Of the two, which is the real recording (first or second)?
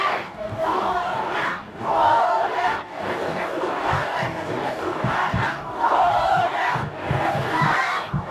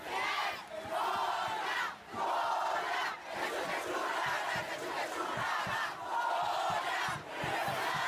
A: second